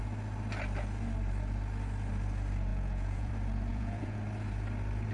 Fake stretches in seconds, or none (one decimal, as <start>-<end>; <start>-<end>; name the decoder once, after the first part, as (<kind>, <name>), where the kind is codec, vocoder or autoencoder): 2.7-3.3 (vocoder, Vocos); 3.7-4.2